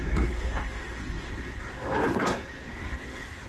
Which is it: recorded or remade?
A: remade